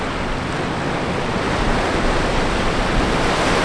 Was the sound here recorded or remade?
recorded